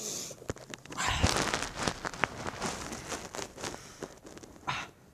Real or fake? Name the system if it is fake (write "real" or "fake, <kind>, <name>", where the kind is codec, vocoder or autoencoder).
real